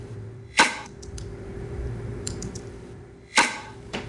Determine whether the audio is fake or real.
fake